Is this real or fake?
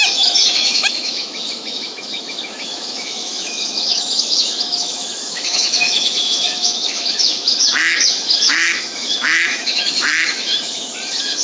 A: fake